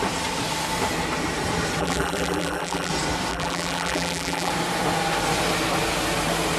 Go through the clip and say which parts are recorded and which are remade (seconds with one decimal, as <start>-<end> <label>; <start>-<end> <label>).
0.0-1.8 recorded; 1.8-2.9 remade; 2.9-3.3 recorded; 3.3-4.5 remade; 4.5-6.6 recorded